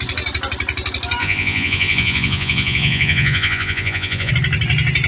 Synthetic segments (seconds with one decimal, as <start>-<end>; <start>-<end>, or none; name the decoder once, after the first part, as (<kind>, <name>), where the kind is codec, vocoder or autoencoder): 1.2-4.3 (vocoder, Vocos)